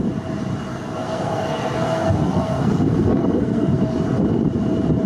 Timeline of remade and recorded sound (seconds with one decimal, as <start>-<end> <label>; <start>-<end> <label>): 0.0-0.7 recorded; 0.7-3.8 remade; 3.8-5.1 recorded